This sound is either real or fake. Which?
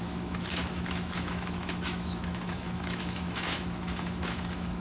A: fake